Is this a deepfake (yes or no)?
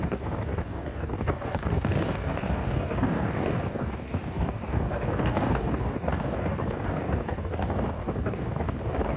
yes